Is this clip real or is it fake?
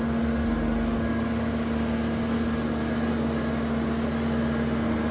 real